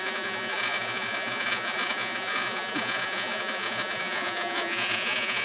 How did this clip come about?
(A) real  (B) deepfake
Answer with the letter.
B